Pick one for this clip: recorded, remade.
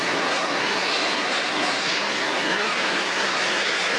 remade